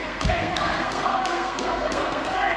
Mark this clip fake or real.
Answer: fake